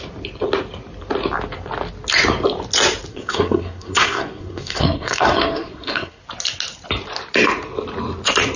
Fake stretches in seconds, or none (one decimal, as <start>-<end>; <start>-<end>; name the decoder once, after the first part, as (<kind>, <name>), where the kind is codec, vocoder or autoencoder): 3.1-6.2 (codec, SNAC)